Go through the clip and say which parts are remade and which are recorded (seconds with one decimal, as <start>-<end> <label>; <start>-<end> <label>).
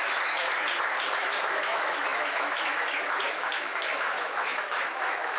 0.0-0.4 remade; 0.4-1.2 recorded; 1.2-5.4 remade